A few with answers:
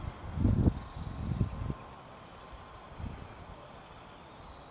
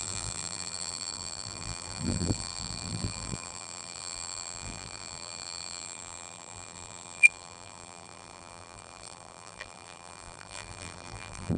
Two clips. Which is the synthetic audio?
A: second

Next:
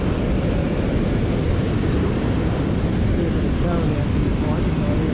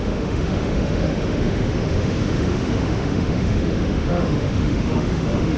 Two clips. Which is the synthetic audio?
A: second